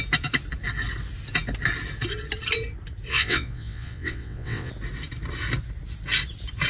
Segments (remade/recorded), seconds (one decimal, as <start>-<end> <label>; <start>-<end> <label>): 0.0-3.1 recorded; 3.1-4.7 remade; 4.7-6.7 recorded